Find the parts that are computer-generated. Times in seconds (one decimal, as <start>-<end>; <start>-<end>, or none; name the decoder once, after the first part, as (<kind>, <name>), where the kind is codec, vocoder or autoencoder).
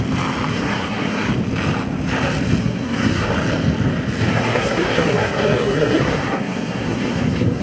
0.5-1.3 (codec, SNAC); 2.6-3.3; 4.3-7.6